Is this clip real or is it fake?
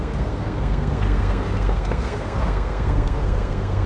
fake